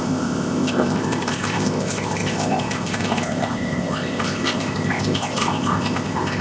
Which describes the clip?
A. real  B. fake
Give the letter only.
B